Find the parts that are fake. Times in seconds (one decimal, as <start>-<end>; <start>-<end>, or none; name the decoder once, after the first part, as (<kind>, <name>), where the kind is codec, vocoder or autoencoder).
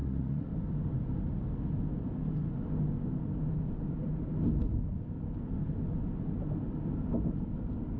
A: 0.0-0.5 (vocoder, Vocos)